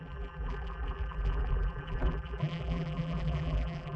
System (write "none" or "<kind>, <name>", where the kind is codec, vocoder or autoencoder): vocoder, BigVGAN v2